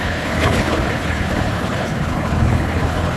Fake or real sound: fake